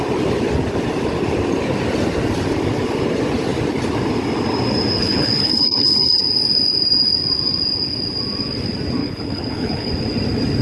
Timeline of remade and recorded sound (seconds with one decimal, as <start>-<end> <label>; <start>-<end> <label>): 0.0-5.0 recorded; 5.0-6.2 remade; 6.2-9.0 recorded; 9.0-9.9 remade; 9.9-10.6 recorded